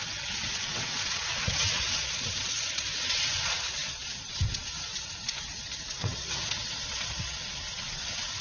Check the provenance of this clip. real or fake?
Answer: fake